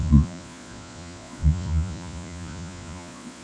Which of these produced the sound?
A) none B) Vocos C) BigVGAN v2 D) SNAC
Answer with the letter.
B